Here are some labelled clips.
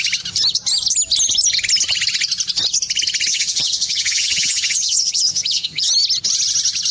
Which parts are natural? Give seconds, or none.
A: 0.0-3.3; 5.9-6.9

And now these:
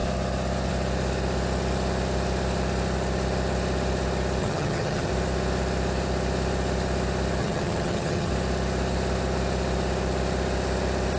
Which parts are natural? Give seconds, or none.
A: 0.0-4.4; 5.1-7.4; 8.3-11.2